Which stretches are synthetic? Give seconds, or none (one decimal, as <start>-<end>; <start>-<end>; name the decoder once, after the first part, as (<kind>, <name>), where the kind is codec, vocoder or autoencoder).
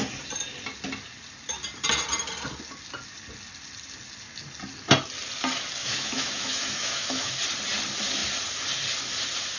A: 5.8-7.3 (autoencoder, DAC-VAE)